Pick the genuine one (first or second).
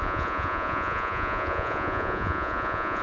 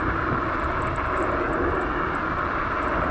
second